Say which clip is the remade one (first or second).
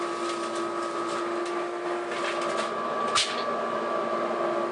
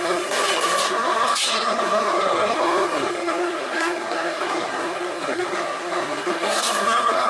second